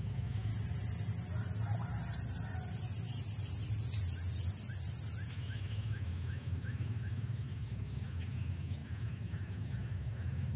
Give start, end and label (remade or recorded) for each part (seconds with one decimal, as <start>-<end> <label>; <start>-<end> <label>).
0.0-0.5 remade; 0.5-5.3 recorded; 5.3-10.6 remade